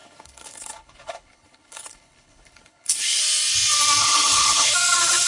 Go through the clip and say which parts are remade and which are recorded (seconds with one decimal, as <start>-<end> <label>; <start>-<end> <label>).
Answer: 0.0-3.2 remade; 3.2-4.0 recorded; 4.0-4.7 remade; 4.7-5.3 recorded